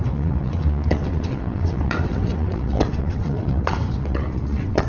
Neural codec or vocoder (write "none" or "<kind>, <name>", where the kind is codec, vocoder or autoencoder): vocoder, WaveNeXt